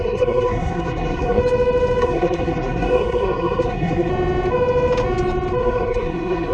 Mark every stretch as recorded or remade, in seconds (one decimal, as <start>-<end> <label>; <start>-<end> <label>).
0.0-1.4 remade; 1.4-2.0 recorded; 2.0-4.1 remade; 4.1-5.6 recorded; 5.6-6.5 remade